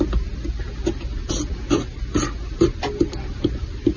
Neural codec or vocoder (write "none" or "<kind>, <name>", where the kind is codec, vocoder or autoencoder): none